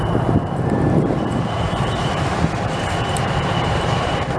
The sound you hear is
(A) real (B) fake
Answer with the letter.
B